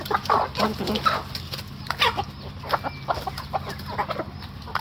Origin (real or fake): real